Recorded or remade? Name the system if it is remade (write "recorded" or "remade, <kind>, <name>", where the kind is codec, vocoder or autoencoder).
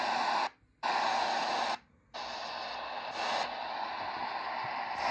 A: recorded